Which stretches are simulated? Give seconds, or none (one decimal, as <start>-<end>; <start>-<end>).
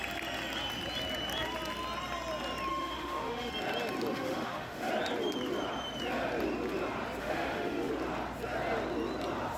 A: 2.7-3.5; 4.1-4.9; 7.2-7.9